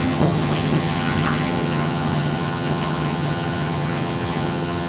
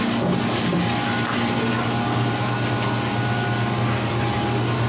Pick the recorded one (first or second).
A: second